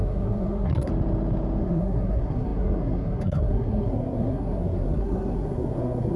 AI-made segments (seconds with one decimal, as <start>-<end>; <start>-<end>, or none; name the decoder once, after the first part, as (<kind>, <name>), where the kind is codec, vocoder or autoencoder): 0.0-0.9 (codec, SNAC); 1.6-6.2